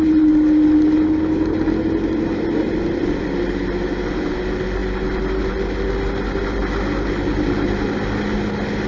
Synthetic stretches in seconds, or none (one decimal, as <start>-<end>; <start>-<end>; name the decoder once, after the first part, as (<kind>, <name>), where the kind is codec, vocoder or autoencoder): none